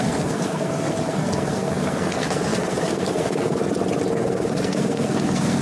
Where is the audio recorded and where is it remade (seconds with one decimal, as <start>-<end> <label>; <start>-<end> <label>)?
0.0-3.6 remade; 3.6-4.1 recorded; 4.1-5.6 remade